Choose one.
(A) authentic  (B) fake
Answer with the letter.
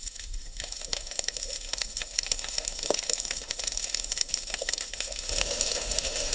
B